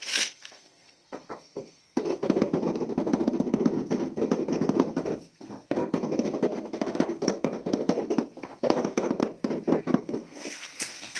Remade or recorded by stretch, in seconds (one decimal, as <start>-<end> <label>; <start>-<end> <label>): 0.0-9.2 remade; 9.2-9.8 recorded; 9.8-11.2 remade